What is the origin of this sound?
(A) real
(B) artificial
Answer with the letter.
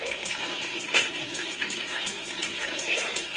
B